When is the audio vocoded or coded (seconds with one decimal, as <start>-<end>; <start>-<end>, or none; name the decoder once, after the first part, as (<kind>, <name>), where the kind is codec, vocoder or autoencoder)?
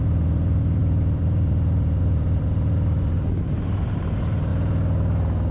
0.0-4.5 (vocoder, BigVGAN v2)